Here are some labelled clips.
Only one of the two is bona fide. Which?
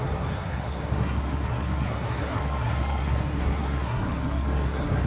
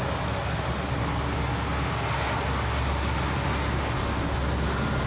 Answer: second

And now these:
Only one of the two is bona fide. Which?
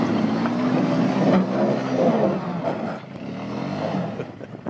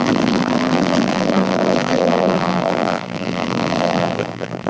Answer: first